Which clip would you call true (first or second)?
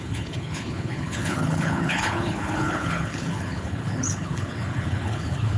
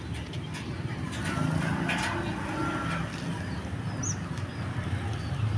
second